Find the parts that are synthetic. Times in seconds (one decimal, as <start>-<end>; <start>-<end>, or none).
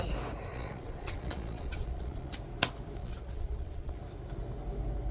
0.5-2.3; 3.0-4.0